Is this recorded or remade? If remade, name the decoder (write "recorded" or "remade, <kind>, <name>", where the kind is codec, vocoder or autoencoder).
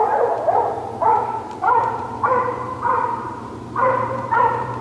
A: remade, vocoder, BigVGAN v2